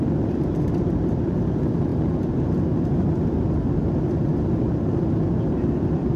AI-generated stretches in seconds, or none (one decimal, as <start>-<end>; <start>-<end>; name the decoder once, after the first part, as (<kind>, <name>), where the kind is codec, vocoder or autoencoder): 0.0-1.9 (vocoder, BigVGAN v2); 5.6-6.2